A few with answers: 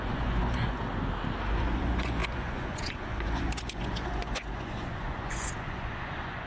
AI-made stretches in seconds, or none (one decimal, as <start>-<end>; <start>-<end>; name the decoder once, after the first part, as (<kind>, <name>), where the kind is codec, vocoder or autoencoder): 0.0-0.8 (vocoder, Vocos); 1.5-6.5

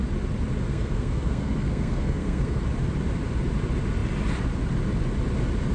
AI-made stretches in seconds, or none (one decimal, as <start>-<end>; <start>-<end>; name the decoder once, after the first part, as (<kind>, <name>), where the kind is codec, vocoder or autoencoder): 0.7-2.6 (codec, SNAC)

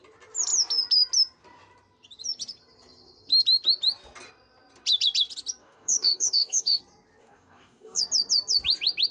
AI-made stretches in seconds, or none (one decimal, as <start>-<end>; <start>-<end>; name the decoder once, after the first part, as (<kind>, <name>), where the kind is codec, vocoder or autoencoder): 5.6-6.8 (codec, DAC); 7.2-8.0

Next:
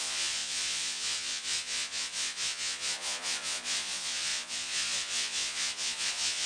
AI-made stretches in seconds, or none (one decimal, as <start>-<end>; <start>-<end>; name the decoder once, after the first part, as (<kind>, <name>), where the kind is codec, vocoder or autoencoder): 0.0-6.5 (vocoder, Vocos)

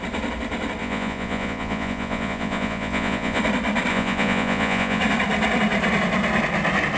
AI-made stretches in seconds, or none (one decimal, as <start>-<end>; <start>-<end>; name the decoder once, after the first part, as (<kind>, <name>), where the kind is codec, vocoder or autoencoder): 0.8-3.4 (vocoder, Vocos); 3.9-5.0